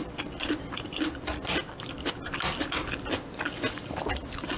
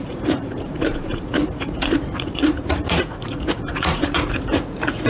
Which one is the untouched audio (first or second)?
first